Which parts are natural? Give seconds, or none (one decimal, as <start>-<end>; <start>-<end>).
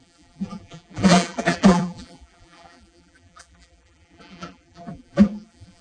none